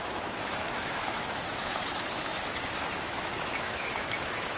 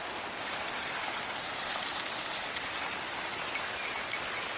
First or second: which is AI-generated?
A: first